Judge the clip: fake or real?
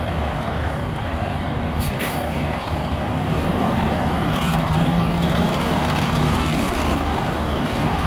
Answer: fake